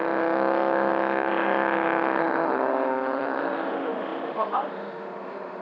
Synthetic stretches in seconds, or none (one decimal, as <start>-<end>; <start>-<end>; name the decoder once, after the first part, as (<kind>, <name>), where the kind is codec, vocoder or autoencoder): 0.0-5.6 (autoencoder, DAC-VAE)